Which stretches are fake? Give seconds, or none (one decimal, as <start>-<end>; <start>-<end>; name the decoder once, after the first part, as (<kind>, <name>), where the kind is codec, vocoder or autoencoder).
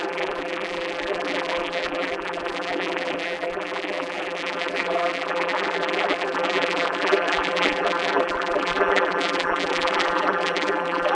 0.0-11.1 (vocoder, BigVGAN v2)